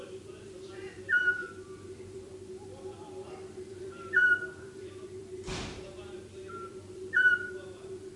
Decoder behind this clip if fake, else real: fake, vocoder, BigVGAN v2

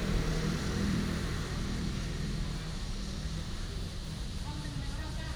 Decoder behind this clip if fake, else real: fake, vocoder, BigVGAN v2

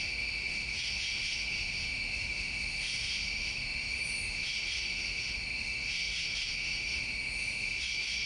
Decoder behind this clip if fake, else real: fake, autoencoder, DAC-VAE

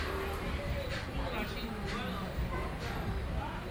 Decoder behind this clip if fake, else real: real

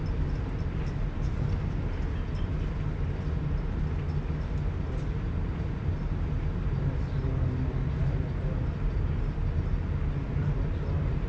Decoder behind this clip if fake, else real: real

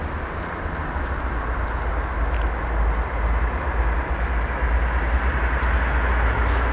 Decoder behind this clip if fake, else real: real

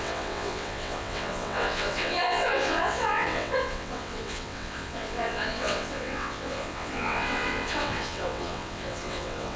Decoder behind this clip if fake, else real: fake, vocoder, WaveNeXt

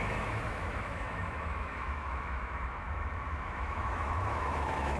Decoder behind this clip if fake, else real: fake, autoencoder, DAC-VAE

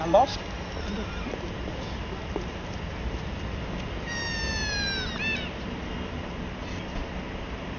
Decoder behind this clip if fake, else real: real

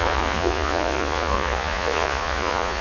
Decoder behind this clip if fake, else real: fake, vocoder, Vocos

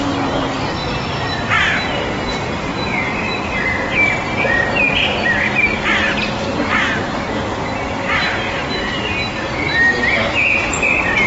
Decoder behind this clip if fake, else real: real